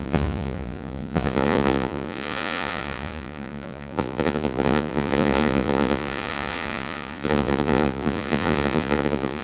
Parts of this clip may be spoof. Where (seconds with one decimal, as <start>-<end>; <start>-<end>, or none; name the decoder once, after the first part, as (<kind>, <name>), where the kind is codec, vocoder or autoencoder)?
0.0-9.4 (vocoder, Vocos)